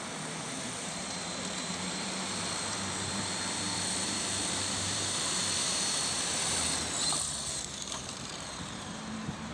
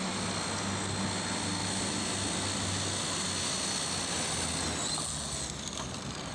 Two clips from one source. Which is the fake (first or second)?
first